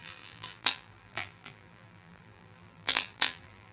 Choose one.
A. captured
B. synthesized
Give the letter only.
B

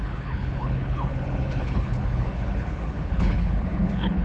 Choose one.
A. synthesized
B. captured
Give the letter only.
A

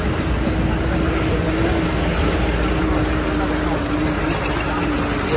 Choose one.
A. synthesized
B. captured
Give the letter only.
B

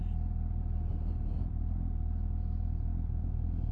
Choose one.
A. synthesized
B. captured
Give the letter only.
B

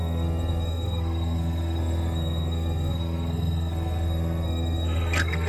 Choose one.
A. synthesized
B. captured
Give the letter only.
A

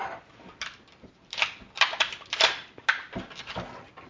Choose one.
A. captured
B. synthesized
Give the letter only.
A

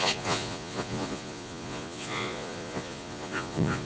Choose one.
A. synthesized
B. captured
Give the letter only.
A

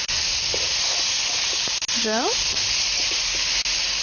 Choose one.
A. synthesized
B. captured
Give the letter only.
B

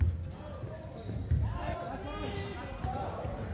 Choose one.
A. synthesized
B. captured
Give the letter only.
B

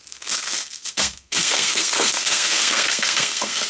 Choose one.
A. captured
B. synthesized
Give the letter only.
B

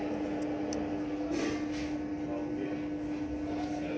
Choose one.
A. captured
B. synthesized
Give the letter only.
A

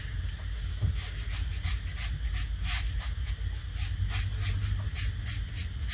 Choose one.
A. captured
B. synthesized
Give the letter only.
A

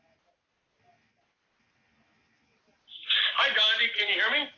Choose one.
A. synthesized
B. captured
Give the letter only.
B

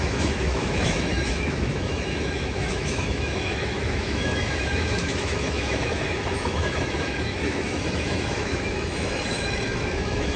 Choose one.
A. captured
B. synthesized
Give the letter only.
B